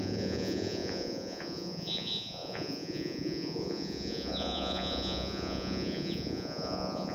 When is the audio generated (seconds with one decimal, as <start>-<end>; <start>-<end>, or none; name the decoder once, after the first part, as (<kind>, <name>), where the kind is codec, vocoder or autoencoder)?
0.0-7.1 (vocoder, Vocos)

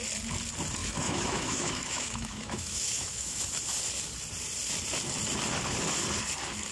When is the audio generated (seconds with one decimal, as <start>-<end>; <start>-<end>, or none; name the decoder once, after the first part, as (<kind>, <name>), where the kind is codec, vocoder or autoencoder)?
0.8-3.4 (autoencoder, DAC-VAE)